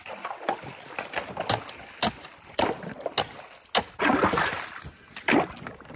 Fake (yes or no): no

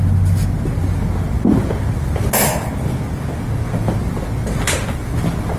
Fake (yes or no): no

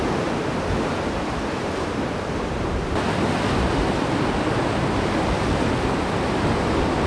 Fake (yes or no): no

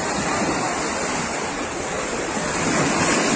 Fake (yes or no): no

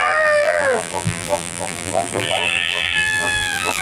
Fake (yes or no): yes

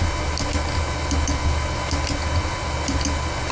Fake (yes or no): no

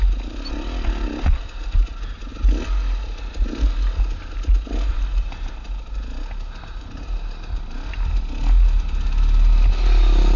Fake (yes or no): no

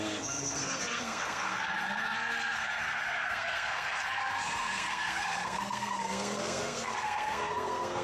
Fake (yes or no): yes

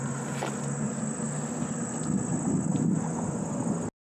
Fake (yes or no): no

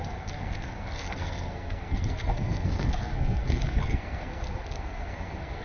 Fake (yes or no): yes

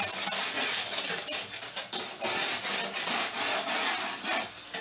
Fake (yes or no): no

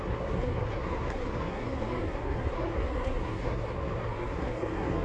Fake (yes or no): yes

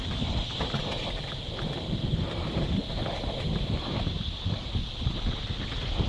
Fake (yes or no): no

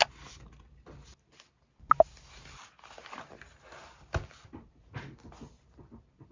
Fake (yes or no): no